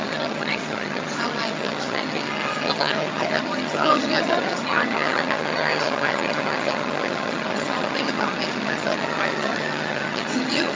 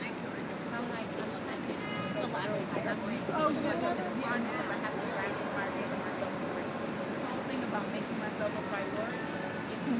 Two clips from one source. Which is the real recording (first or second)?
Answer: second